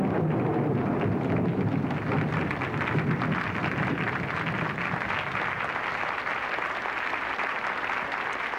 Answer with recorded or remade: recorded